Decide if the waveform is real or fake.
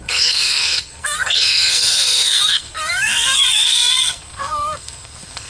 fake